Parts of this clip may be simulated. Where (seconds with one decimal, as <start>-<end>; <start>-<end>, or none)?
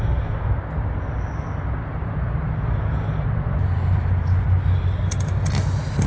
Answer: 2.0-4.0